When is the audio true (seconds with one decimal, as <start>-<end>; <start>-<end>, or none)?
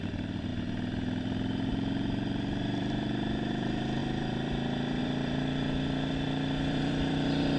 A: none